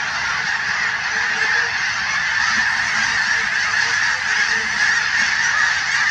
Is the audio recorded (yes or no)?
no